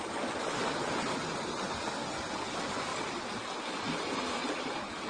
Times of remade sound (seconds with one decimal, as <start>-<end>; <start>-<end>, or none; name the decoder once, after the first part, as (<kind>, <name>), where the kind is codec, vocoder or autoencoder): none